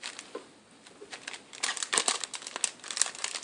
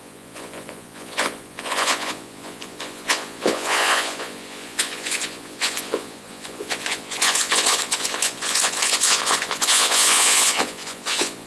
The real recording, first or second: first